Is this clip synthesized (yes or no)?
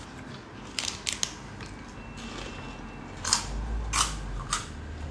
no